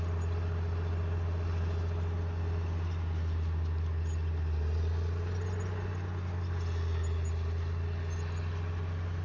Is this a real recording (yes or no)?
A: yes